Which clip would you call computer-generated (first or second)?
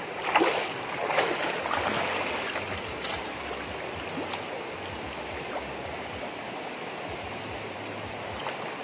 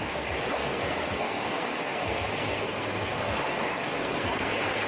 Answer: second